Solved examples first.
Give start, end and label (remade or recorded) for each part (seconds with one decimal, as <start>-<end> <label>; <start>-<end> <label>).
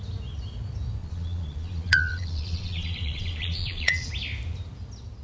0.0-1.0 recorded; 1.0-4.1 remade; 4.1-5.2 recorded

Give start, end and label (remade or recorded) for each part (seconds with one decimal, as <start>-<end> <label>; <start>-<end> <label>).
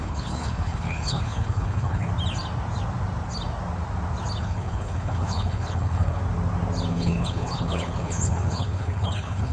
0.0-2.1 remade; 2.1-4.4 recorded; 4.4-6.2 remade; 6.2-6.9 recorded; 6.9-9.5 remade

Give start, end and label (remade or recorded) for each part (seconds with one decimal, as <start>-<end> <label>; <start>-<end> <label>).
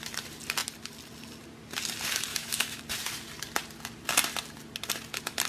0.0-2.3 recorded; 2.3-2.8 remade; 2.8-5.5 recorded